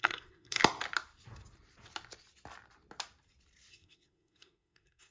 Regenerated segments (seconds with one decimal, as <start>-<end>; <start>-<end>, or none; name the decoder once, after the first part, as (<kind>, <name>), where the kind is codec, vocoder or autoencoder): 0.0-0.6 (codec, SNAC); 3.7-5.1